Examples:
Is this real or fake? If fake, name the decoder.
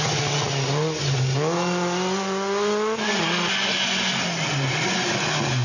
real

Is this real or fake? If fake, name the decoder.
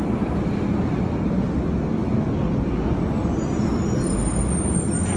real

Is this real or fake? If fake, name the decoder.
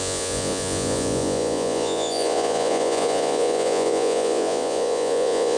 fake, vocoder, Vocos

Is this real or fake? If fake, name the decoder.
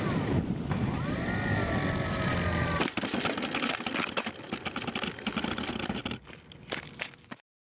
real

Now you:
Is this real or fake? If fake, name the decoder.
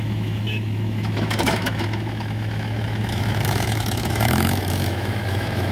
fake, autoencoder, DAC-VAE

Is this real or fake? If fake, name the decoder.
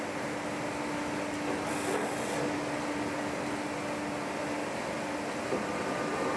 real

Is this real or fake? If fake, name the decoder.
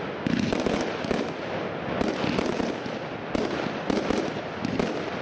real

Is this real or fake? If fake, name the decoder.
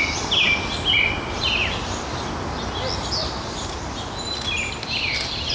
real